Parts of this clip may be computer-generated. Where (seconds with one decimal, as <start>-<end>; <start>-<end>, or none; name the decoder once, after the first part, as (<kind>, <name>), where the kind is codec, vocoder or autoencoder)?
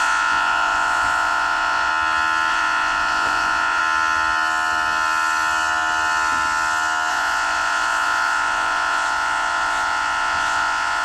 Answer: 0.0-1.9 (vocoder, Vocos); 2.5-3.8; 7.1-11.0